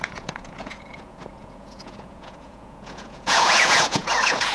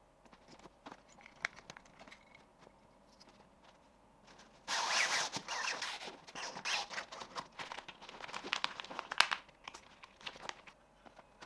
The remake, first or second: first